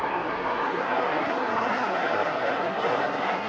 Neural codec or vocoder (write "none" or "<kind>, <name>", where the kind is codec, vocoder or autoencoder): codec, SNAC